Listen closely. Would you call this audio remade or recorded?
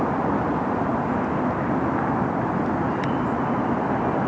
remade